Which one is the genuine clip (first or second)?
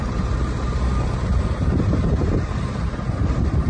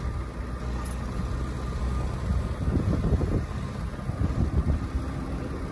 second